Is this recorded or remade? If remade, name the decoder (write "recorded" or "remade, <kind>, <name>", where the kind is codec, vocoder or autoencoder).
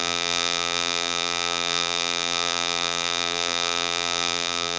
remade, vocoder, BigVGAN v2